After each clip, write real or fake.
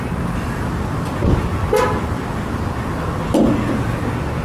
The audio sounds real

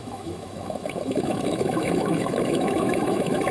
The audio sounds fake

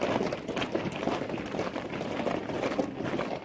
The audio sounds real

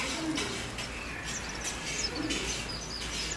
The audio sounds real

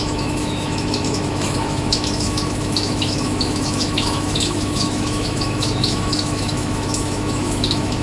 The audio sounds fake